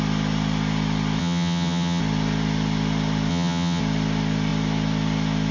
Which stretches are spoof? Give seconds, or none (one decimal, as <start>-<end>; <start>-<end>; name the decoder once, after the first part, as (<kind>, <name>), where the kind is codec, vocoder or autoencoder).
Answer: 1.2-2.0 (vocoder, HiFi-GAN); 3.3-3.8